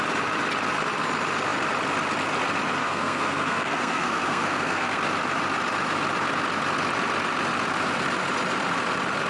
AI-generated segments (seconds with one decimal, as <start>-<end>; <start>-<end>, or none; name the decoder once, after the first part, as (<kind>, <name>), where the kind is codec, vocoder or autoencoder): 2.8-5.0 (codec, SNAC)